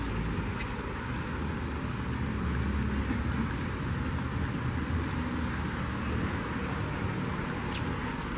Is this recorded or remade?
recorded